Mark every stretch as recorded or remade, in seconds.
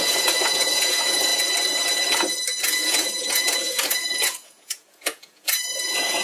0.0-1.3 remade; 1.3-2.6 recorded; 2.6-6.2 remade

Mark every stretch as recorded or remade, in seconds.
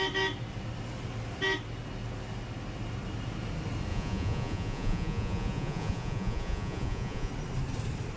0.0-3.9 recorded; 3.9-7.3 remade; 7.3-8.2 recorded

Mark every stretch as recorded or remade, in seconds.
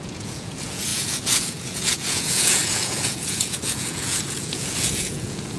0.0-5.6 remade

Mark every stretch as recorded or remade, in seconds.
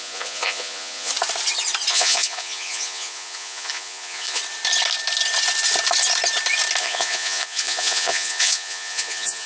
0.0-1.1 remade; 1.1-1.9 recorded; 1.9-4.4 remade; 4.4-6.8 recorded; 6.8-9.5 remade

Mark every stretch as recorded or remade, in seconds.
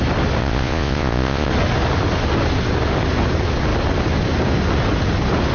0.0-0.4 recorded; 0.4-1.5 remade; 1.5-5.5 recorded